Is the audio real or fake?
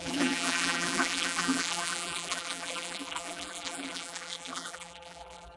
fake